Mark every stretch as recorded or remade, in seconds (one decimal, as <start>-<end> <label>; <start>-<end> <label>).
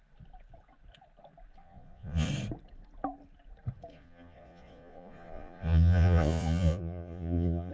0.0-1.6 recorded; 1.6-2.3 remade; 2.3-3.9 recorded; 3.9-7.7 remade